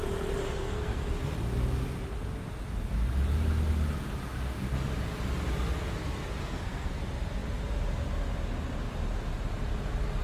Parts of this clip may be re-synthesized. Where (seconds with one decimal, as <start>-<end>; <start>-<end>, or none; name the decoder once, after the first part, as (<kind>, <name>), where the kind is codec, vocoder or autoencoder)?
0.4-1.1 (codec, SNAC); 6.4-6.9